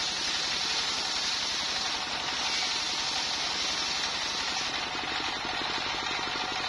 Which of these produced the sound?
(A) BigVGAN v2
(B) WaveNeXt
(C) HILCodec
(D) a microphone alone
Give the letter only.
D